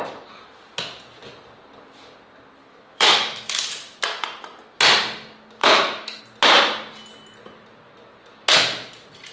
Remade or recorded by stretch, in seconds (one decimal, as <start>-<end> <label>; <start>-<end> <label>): 0.0-2.6 recorded; 2.6-4.0 remade; 4.0-5.6 recorded; 5.6-6.2 remade; 6.2-9.3 recorded